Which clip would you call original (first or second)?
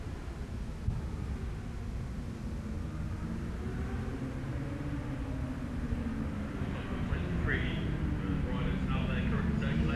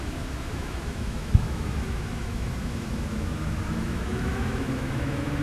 first